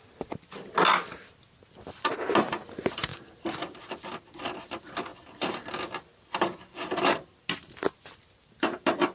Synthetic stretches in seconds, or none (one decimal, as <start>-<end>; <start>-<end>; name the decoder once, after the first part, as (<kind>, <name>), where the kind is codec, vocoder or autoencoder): none